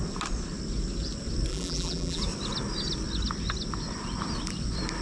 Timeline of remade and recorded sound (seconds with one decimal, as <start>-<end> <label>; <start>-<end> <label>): 0.0-1.5 recorded; 1.5-2.2 remade; 2.2-5.0 recorded